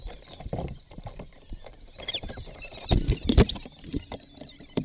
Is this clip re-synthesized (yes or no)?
no